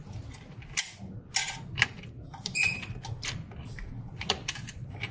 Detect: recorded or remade recorded